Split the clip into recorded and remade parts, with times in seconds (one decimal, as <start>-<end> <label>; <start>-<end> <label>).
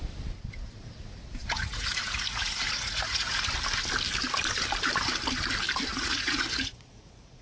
0.0-1.4 recorded; 1.4-3.5 remade; 3.5-5.9 recorded; 5.9-7.4 remade